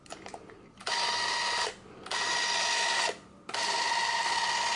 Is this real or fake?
real